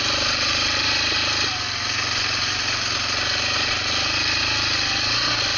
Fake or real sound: real